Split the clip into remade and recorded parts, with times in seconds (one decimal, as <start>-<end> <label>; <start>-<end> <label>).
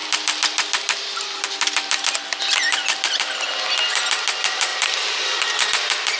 0.0-6.2 recorded